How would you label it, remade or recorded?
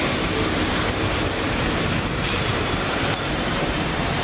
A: remade